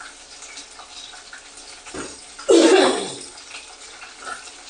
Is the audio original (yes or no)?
yes